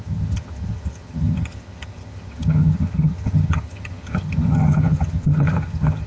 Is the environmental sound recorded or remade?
remade